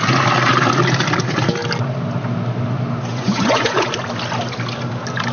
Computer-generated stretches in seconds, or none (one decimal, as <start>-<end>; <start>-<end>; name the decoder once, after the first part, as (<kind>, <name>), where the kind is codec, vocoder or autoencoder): 3.1-3.9 (vocoder, Vocos)